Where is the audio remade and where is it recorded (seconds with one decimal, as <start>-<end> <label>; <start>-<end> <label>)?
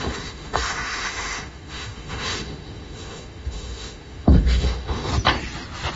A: 0.0-5.1 remade; 5.1-6.0 recorded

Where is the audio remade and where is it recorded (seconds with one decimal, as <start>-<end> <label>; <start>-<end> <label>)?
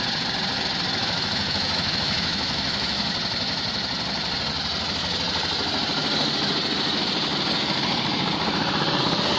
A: 0.0-1.0 recorded; 1.0-3.1 remade; 3.1-9.4 recorded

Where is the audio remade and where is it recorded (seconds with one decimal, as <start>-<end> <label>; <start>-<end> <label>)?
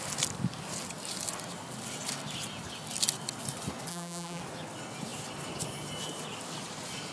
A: 0.0-3.9 recorded; 3.9-4.4 remade; 4.4-7.1 recorded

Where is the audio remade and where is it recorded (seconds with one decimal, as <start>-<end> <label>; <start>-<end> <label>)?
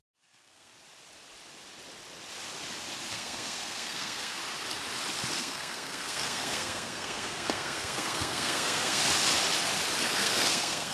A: 0.0-0.7 remade; 0.7-3.1 recorded; 3.1-4.4 remade; 4.4-5.4 recorded; 5.4-9.0 remade; 9.0-10.0 recorded; 10.0-10.9 remade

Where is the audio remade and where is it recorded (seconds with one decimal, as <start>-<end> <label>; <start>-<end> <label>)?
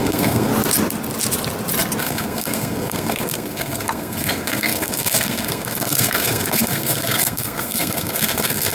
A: 0.0-0.5 remade; 0.5-2.0 recorded; 2.0-8.7 remade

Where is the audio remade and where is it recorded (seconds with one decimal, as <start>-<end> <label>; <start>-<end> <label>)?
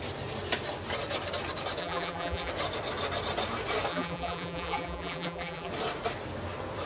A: 0.0-1.8 recorded; 1.8-2.5 remade; 2.5-3.9 recorded; 3.9-5.7 remade; 5.7-6.9 recorded